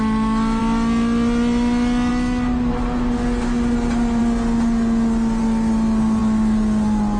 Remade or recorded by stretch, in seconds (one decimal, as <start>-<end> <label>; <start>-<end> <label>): 0.0-7.2 recorded